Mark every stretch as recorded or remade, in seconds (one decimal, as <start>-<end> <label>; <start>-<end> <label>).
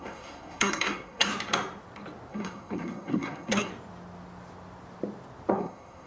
0.0-1.3 remade; 1.3-2.3 recorded; 2.3-3.7 remade; 3.7-5.5 recorded; 5.5-6.1 remade